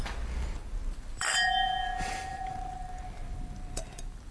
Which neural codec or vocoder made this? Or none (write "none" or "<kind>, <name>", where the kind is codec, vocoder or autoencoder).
vocoder, BigVGAN v2